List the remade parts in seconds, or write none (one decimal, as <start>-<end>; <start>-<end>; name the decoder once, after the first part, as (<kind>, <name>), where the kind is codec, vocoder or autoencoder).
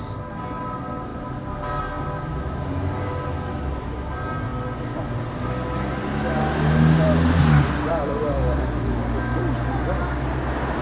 none